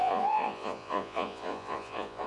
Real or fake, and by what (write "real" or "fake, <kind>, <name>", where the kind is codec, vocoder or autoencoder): fake, vocoder, Vocos